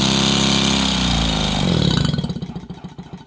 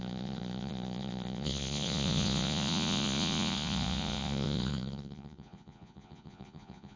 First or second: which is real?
first